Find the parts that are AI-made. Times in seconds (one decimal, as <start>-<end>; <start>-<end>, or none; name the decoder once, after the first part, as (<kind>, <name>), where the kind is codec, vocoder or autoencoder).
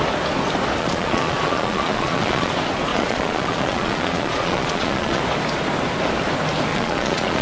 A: 0.8-2.5 (vocoder, Vocos); 2.9-5.2; 6.7-7.4